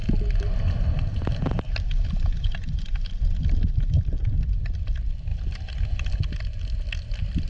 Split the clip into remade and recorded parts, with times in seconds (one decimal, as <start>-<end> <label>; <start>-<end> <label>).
0.0-2.1 recorded; 2.1-7.5 remade